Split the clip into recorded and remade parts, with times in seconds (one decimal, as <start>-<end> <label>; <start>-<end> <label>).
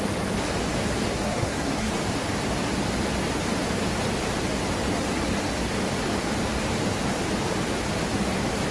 0.0-1.1 recorded; 1.1-1.9 remade; 1.9-8.7 recorded